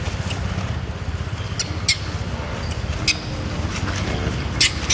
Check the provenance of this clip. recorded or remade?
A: recorded